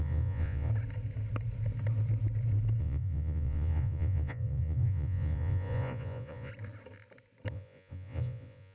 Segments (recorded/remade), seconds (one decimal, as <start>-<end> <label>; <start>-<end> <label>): 0.0-0.7 remade; 0.7-2.8 recorded; 2.8-6.5 remade; 6.5-7.5 recorded; 7.5-8.7 remade